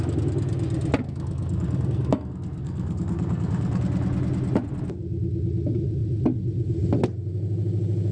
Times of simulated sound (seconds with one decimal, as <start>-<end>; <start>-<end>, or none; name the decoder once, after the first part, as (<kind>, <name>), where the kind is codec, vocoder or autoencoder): 1.0-3.8 (codec, SNAC)